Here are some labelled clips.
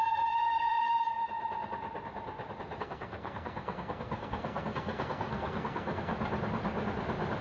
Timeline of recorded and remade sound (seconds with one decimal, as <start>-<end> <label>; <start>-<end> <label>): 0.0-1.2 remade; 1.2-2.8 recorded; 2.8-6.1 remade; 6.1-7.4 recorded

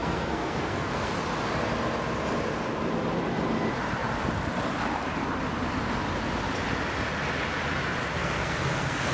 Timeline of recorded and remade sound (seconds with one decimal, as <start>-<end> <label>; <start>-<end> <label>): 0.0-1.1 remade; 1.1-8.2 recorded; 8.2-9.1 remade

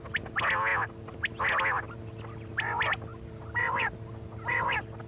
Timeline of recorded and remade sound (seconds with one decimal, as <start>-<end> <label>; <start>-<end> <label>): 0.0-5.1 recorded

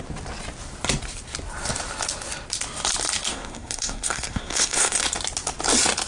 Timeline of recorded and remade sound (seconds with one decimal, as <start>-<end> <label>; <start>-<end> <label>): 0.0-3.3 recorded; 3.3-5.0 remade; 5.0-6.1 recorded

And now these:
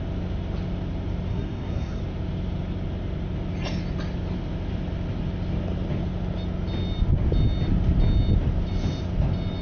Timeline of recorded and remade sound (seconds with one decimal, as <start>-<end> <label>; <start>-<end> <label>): 0.0-1.3 recorded; 1.3-2.0 remade; 2.0-9.6 recorded

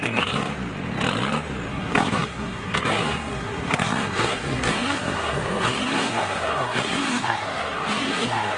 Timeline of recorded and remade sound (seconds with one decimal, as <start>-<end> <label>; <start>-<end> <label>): 0.0-0.5 remade; 0.5-1.7 recorded; 1.7-8.6 remade